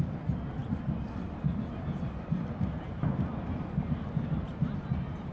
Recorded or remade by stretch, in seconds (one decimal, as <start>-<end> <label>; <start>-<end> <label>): 0.0-5.3 recorded